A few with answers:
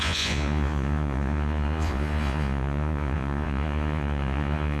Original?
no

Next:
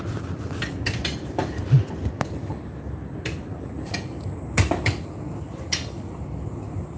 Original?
yes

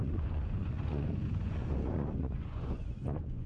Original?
no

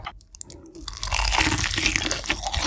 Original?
yes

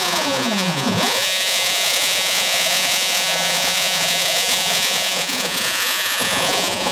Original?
no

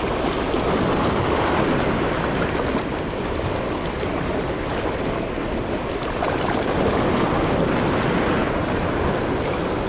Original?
yes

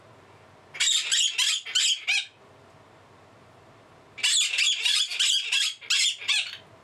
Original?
yes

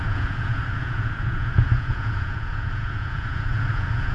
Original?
no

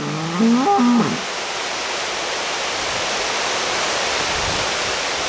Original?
yes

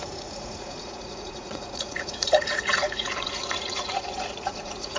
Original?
no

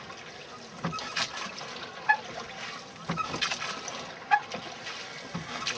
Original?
yes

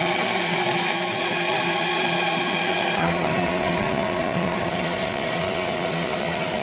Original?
no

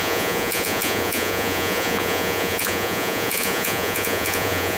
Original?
no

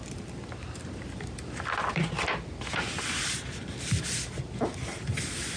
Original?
yes